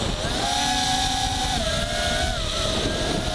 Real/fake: real